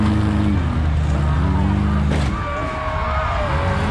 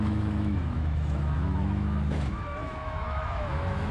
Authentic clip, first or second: first